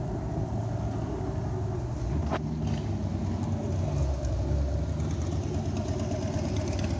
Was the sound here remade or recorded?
recorded